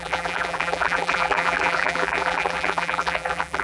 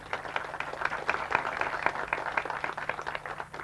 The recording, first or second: second